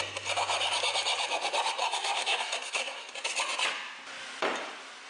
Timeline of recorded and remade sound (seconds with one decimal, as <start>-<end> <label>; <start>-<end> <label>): 0.0-1.8 recorded; 1.8-3.1 remade; 3.1-5.1 recorded